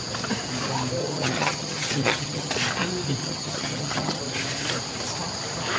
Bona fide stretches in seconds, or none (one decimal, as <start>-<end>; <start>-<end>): 0.0-1.0; 2.5-3.2; 4.2-5.8